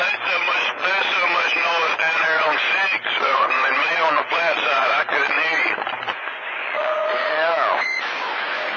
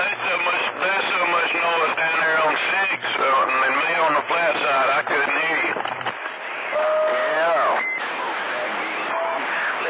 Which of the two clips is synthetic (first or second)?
first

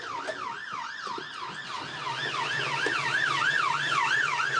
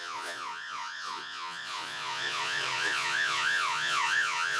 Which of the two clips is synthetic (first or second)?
second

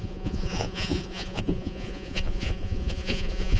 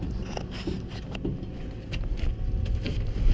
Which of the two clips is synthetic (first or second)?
first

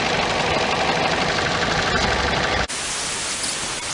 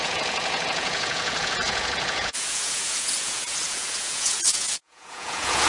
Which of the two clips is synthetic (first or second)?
second